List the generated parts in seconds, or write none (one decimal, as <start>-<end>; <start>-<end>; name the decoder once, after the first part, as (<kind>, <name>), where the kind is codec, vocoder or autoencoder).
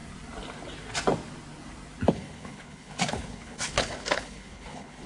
2.1-5.1 (codec, HILCodec)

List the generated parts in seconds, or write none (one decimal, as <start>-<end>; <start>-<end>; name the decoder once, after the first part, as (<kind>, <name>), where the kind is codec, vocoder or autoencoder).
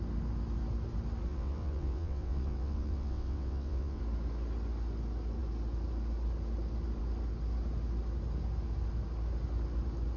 1.3-4.0 (vocoder, WaveNeXt)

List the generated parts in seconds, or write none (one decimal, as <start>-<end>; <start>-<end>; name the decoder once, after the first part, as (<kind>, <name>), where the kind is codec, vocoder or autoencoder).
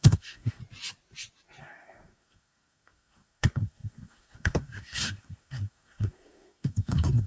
0.0-0.6 (codec, SNAC); 1.6-7.3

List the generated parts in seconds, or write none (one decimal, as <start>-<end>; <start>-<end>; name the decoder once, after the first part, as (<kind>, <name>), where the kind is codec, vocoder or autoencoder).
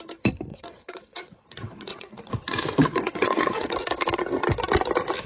0.5-3.7 (vocoder, WaveNeXt)